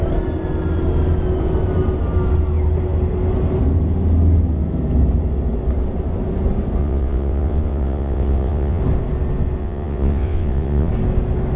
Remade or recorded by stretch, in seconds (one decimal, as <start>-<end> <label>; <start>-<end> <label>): 0.0-6.8 recorded; 6.8-8.8 remade; 8.8-9.6 recorded; 9.6-10.9 remade; 10.9-11.6 recorded